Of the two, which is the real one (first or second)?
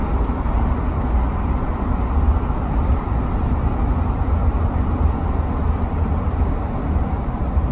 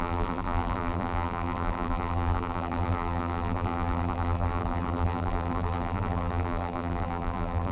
first